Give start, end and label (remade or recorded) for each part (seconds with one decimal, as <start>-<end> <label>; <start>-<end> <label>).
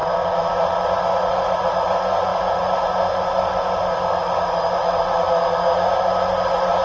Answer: 0.0-6.8 recorded